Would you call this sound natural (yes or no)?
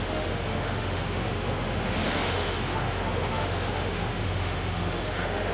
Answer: no